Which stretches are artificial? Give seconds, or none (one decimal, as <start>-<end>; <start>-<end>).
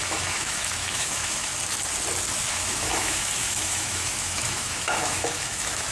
0.0-1.5; 2.5-5.9